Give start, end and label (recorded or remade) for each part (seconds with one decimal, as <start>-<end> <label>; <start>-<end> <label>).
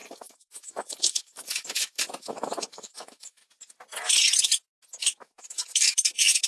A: 0.0-3.4 remade; 3.4-5.0 recorded; 5.0-6.5 remade